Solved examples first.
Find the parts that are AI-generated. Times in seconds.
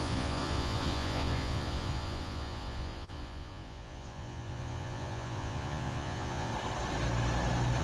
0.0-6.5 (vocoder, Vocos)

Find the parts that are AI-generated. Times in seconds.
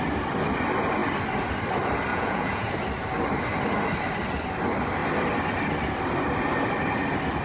2.1-2.7 (vocoder, Vocos)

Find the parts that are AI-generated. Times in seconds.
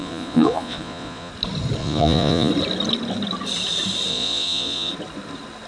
0.0-1.3 (vocoder, Vocos); 1.8-2.5; 4.1-4.9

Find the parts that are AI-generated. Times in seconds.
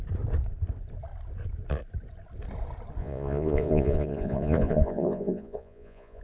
3.0-6.2 (vocoder, Vocos)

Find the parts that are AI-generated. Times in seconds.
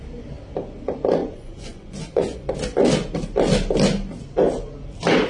1.2-2.5 (vocoder, Vocos)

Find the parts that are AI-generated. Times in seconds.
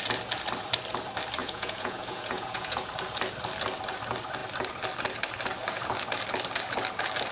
1.4-2.9 (vocoder, Vocos)